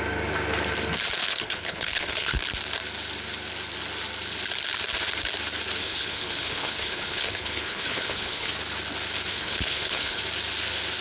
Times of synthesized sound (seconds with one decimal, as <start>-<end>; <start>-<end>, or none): 1.2-2.4; 5.8-8.5; 9.3-10.2